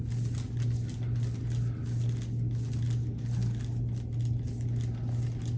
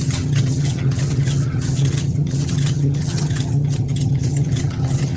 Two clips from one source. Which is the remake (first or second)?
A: second